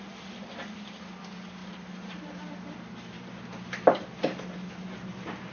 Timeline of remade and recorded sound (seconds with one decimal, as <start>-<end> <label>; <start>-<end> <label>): 0.0-1.6 recorded; 1.6-4.5 remade; 4.5-5.5 recorded